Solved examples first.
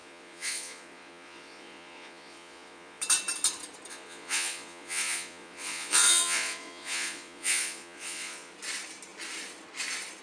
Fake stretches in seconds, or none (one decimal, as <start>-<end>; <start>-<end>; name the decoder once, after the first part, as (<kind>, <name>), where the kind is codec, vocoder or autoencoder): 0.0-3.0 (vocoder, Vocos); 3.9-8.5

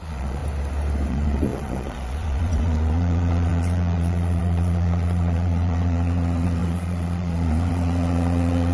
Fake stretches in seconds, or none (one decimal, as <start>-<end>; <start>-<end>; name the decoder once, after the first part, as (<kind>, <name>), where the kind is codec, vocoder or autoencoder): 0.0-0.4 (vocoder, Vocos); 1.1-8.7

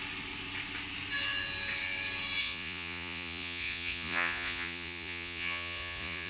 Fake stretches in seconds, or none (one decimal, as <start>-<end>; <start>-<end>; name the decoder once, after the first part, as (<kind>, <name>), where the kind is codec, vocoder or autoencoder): 2.4-6.3 (vocoder, Vocos)